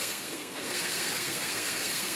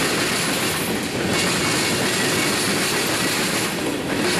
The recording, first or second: second